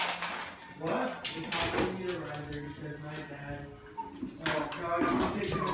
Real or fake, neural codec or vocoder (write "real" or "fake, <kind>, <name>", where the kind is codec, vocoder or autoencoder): real